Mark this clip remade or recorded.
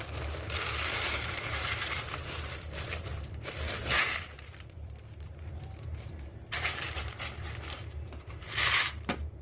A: remade